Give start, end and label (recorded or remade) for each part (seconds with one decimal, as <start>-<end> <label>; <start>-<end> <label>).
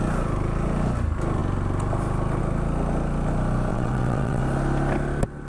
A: 0.0-3.7 recorded; 3.7-4.4 remade; 4.4-5.5 recorded